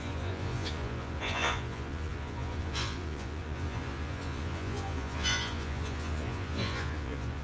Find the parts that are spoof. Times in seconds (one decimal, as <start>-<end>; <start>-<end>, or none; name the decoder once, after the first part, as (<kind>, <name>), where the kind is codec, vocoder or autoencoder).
0.0-7.4 (vocoder, Vocos)